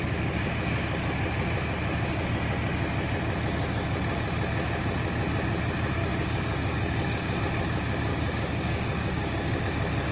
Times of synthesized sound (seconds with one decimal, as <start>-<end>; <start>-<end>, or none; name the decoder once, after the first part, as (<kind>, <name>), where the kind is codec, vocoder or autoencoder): 6.0-7.4 (codec, DAC); 8.1-9.6